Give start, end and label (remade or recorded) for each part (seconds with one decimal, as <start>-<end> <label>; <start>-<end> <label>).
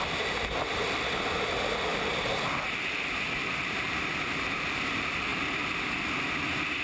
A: 0.0-3.4 recorded; 3.4-4.8 remade; 4.8-5.3 recorded; 5.3-6.0 remade; 6.0-6.8 recorded